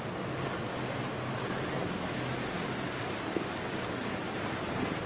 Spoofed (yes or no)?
no